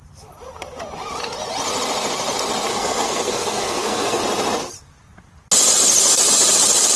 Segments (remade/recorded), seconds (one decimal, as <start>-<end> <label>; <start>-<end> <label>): 0.0-2.7 recorded; 2.7-4.2 remade; 4.2-7.0 recorded